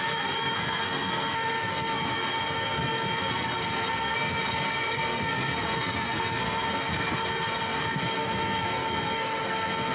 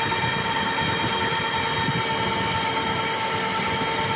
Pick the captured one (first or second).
second